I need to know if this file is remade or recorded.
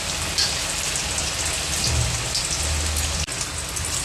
recorded